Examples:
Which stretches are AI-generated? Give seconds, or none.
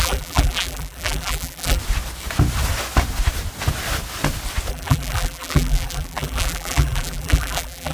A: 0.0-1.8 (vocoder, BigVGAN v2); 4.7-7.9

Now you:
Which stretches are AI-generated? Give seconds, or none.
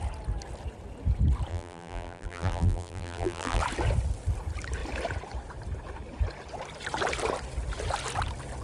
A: 1.5-3.6 (vocoder, BigVGAN v2)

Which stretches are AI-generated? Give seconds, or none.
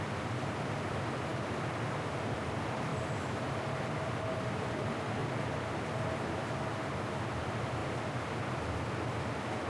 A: 0.0-2.9 (vocoder, BigVGAN v2); 3.5-5.2; 7.0-7.8; 8.5-9.7